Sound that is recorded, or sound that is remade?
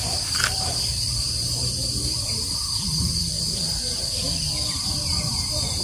remade